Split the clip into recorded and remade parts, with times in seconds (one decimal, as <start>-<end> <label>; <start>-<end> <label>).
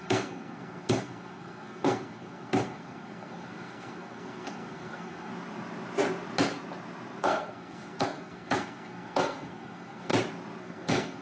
0.0-5.3 remade; 5.3-7.2 recorded; 7.2-10.1 remade; 10.1-10.6 recorded; 10.6-11.2 remade